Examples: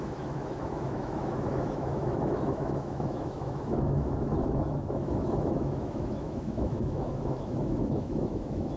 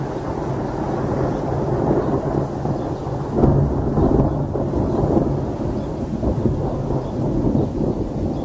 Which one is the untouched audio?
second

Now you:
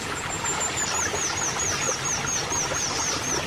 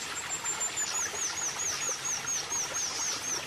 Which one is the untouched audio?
second